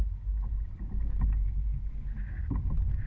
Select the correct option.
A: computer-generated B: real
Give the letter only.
B